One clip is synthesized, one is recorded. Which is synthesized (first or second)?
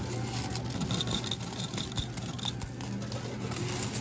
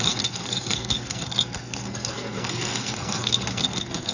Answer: second